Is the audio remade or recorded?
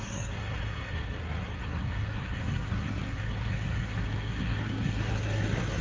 remade